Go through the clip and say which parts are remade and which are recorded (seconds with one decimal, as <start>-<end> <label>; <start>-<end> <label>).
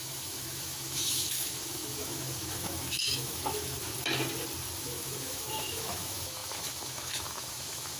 0.0-3.9 remade; 3.9-4.8 recorded; 4.8-8.0 remade